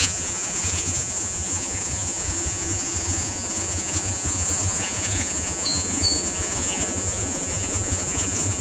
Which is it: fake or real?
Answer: fake